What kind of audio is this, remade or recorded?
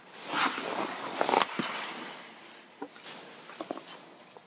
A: recorded